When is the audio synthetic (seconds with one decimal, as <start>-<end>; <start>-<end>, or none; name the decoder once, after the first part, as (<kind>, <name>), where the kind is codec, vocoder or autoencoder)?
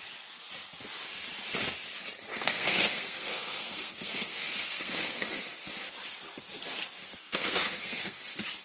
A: 2.3-5.3 (codec, SNAC); 7.0-8.2